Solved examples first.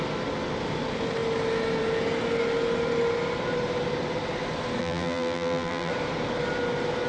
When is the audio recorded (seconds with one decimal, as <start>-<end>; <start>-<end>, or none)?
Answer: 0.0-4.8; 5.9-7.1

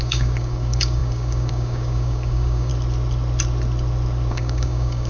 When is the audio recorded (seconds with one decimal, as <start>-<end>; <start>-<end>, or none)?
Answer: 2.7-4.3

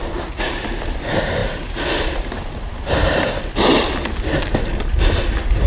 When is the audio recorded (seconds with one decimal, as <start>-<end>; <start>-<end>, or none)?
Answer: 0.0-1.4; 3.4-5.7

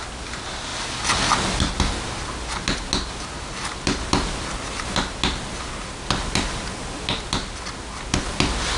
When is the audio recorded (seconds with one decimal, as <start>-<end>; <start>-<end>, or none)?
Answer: 0.0-8.8

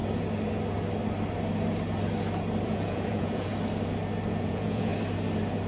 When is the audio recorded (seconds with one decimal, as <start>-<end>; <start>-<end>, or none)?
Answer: 0.0-2.6; 3.5-4.4; 4.9-5.7

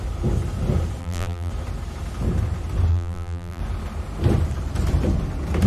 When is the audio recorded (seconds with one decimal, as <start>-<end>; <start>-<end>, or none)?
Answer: 0.0-1.0; 1.5-2.9; 3.6-5.7